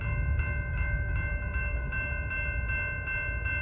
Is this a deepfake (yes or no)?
no